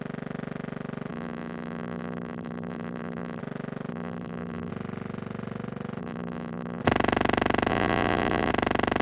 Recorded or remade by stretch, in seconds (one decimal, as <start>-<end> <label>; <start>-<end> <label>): 0.0-1.1 recorded; 1.1-3.4 remade; 3.4-3.9 recorded; 3.9-4.7 remade; 4.7-6.0 recorded; 6.0-6.8 remade; 6.8-7.7 recorded; 7.7-8.5 remade; 8.5-9.0 recorded